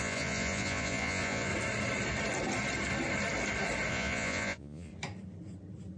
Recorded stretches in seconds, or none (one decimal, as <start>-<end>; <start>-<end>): 1.5-3.9; 4.9-6.0